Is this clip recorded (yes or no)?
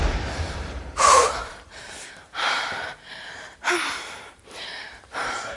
no